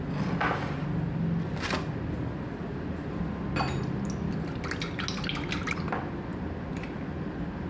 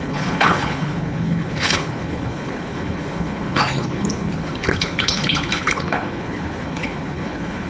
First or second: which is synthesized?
second